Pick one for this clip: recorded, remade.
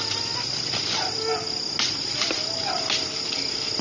recorded